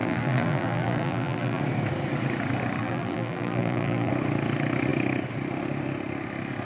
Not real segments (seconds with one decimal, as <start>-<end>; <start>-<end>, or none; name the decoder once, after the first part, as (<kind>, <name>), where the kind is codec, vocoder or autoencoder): 0.0-1.6 (vocoder, BigVGAN v2); 2.8-4.1